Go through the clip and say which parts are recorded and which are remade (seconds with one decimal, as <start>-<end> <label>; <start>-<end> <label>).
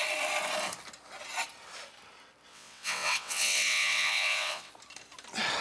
0.0-2.5 recorded; 2.5-4.7 remade; 4.7-5.6 recorded